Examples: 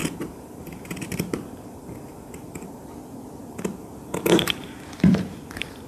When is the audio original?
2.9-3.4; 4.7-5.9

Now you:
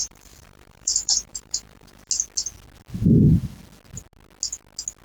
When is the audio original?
2.1-5.0

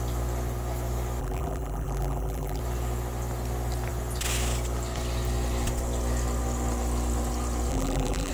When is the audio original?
0.0-1.2; 2.6-7.7

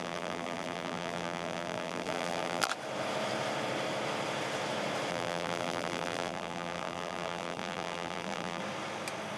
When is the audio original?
2.7-5.1; 8.6-9.4